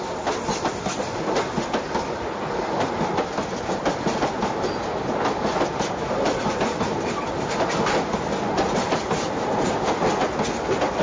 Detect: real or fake real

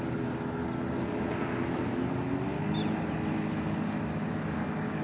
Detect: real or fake real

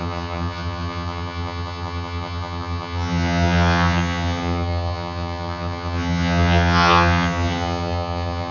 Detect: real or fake fake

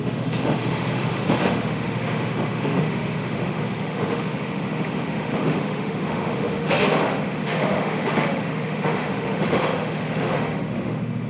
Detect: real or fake fake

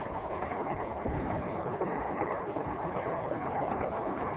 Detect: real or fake fake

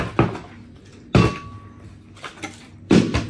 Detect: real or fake real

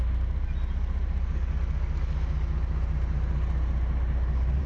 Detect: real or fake real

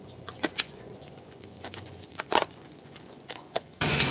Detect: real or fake fake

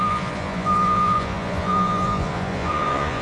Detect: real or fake fake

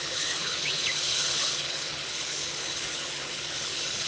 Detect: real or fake fake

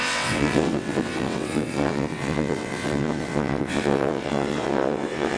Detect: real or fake fake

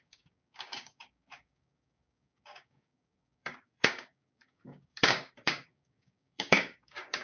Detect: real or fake fake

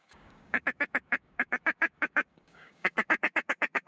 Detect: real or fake fake